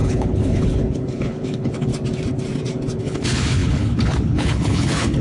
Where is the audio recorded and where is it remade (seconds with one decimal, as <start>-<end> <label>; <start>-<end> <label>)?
0.0-1.9 remade; 1.9-3.0 recorded; 3.0-5.2 remade